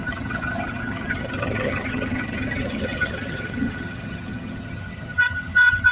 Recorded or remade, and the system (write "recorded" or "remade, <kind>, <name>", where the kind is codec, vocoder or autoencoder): remade, vocoder, HiFi-GAN